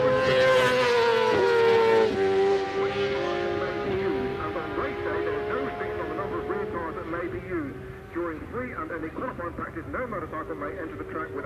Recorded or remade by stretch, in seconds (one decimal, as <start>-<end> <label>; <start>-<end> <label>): 0.0-11.5 recorded